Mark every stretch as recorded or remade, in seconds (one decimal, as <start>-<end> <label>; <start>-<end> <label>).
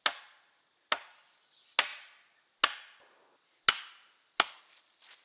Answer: 0.0-5.2 recorded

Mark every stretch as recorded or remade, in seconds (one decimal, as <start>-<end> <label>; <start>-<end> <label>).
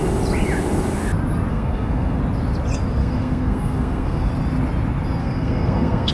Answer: 0.0-1.5 recorded; 1.5-2.2 remade; 2.2-3.0 recorded; 3.0-4.3 remade; 4.3-5.2 recorded; 5.2-6.1 remade